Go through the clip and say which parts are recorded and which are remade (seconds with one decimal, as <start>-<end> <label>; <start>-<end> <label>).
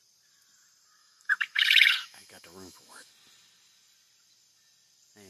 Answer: 0.0-1.0 recorded; 1.0-3.1 remade; 3.1-5.3 recorded